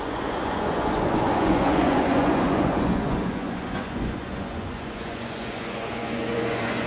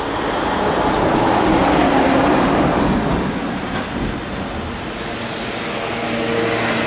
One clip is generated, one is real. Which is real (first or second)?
second